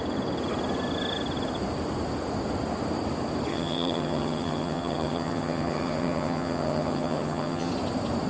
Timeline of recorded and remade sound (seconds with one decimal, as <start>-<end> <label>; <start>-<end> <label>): 0.0-3.5 recorded; 3.5-7.7 remade; 7.7-8.3 recorded